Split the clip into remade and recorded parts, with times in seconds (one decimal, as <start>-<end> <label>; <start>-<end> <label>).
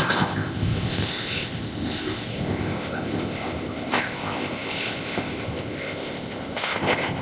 0.0-7.2 remade